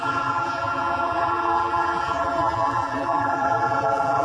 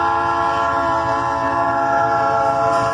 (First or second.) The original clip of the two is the second